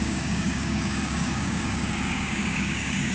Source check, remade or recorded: remade